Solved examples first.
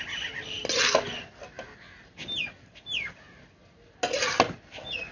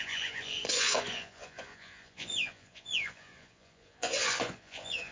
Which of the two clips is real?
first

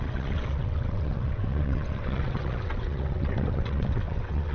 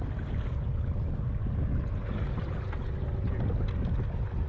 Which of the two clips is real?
second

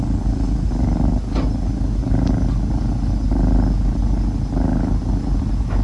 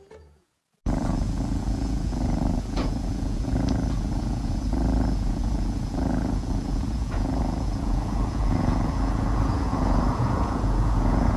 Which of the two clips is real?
first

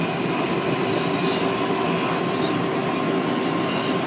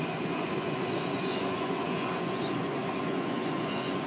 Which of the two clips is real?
first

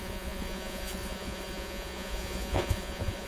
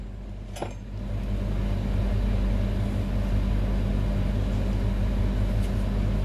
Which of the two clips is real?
second